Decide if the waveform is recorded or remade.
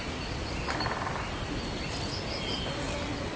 recorded